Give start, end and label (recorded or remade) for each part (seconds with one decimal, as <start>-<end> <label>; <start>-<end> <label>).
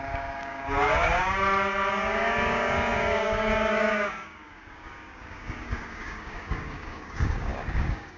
0.0-1.2 remade; 1.2-1.9 recorded; 1.9-8.2 remade